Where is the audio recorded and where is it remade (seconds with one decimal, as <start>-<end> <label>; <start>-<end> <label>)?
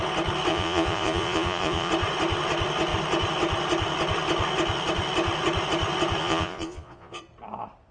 0.0-0.5 recorded; 0.5-1.9 remade; 1.9-6.2 recorded; 6.2-7.2 remade; 7.2-7.9 recorded